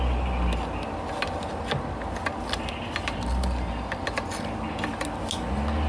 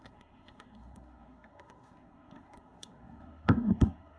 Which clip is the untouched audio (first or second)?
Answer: first